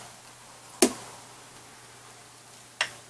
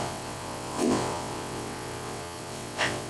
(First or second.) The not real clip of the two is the second